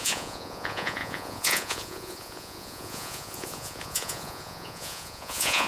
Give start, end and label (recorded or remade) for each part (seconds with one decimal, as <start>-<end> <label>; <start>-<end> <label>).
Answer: 0.0-5.7 remade

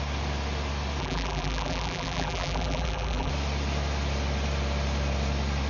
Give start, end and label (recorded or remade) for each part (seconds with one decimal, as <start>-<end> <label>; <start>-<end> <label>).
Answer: 0.0-1.0 recorded; 1.0-3.3 remade; 3.3-5.7 recorded

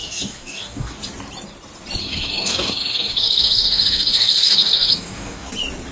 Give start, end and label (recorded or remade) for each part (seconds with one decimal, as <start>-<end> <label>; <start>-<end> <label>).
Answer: 0.0-1.0 remade; 1.0-2.0 recorded; 2.0-5.5 remade; 5.5-5.9 recorded

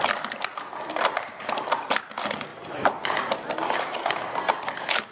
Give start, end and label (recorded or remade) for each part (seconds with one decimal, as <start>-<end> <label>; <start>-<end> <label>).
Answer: 0.0-2.5 recorded; 2.5-3.4 remade; 3.4-5.1 recorded

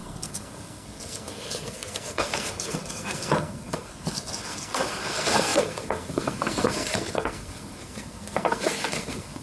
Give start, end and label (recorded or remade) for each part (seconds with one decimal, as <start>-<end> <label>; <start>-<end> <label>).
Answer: 0.0-9.4 remade

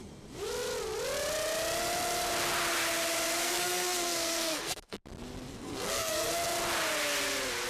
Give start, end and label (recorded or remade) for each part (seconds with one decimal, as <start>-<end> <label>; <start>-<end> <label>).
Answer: 0.0-3.4 recorded; 3.4-5.0 remade; 5.0-5.5 recorded; 5.5-6.3 remade; 6.3-7.7 recorded

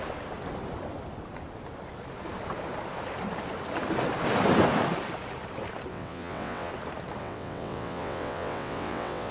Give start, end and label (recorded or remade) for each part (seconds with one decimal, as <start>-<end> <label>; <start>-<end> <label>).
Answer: 0.0-5.9 recorded; 5.9-6.7 remade; 6.7-7.2 recorded; 7.2-9.3 remade

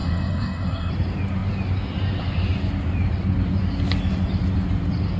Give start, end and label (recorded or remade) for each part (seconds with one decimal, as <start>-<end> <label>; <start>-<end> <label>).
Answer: 0.0-0.9 remade; 0.9-5.2 recorded